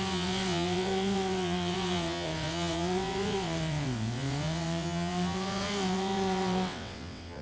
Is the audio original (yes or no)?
no